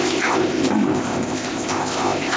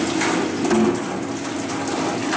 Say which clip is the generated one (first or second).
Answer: first